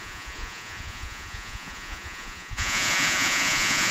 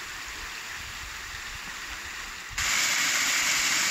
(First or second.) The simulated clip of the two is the first